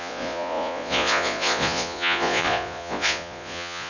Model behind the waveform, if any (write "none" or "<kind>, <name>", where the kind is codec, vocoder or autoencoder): vocoder, Vocos